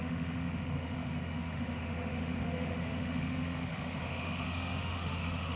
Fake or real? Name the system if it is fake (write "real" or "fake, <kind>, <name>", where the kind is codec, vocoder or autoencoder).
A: fake, autoencoder, DAC-VAE